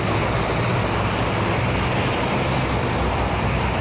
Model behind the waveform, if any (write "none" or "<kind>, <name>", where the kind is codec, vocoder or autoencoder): none